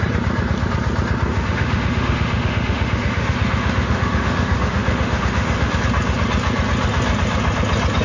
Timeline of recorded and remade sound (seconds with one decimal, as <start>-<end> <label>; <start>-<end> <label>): 0.0-1.3 recorded; 1.3-5.8 remade; 5.8-8.0 recorded